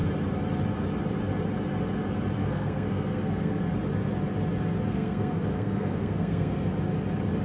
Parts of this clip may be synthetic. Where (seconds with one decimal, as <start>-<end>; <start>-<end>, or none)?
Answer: 2.4-3.6; 4.9-6.7